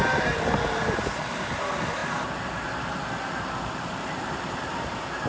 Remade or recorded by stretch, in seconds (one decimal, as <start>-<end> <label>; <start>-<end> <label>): 0.0-5.3 recorded